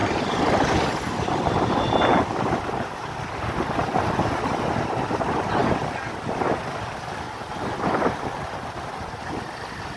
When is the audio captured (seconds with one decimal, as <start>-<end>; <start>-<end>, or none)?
0.0-10.0